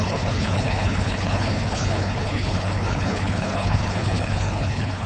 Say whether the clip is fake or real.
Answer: fake